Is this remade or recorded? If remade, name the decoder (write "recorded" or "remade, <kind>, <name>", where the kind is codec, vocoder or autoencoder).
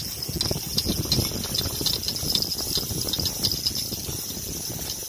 recorded